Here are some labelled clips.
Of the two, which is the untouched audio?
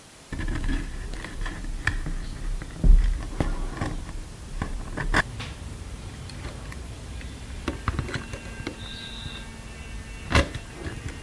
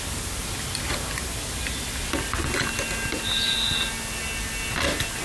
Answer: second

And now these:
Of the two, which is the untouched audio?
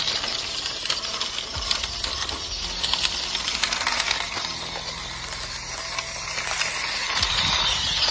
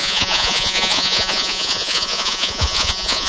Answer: first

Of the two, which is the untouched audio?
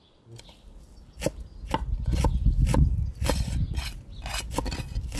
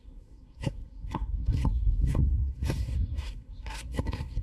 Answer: first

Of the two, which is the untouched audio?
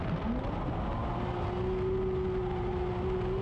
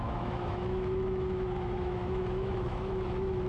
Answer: first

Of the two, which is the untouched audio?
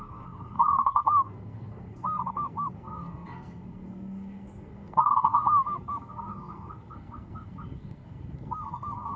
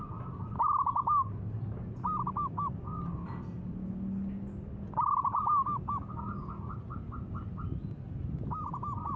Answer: second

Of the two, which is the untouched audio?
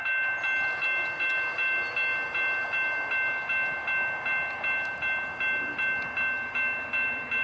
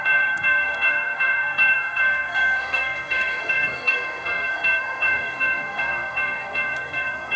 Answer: first